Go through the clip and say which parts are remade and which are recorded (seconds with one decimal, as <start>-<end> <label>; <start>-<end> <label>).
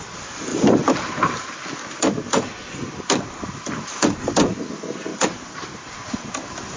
0.0-0.5 recorded; 0.5-4.6 remade; 4.6-5.1 recorded; 5.1-6.8 remade